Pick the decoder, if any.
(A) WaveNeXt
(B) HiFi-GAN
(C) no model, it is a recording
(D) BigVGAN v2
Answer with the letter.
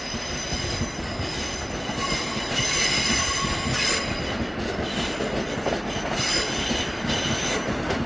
C